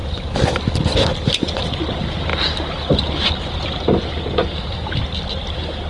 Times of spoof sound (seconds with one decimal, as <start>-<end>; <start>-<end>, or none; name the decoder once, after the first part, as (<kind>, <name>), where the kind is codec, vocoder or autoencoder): none